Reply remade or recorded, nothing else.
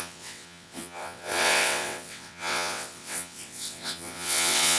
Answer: remade